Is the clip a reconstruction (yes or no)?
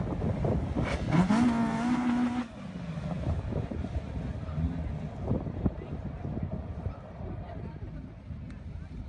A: no